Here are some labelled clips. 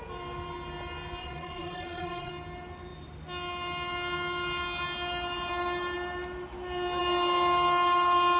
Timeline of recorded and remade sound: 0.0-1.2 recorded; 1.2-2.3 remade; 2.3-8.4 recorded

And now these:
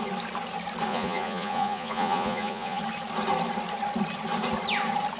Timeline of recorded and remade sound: 0.0-0.9 recorded; 0.9-2.8 remade; 2.8-5.2 recorded

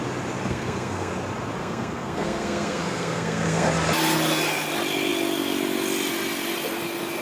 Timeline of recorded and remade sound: 0.0-0.4 recorded; 0.4-1.1 remade; 1.1-1.6 recorded; 1.6-3.7 remade; 3.7-7.2 recorded

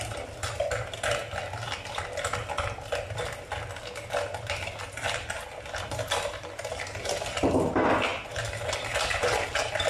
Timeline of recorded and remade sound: 0.0-9.9 recorded